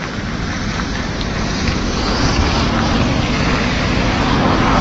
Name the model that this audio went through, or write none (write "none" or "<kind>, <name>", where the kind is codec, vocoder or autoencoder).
none